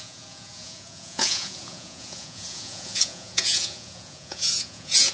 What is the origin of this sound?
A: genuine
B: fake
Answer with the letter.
B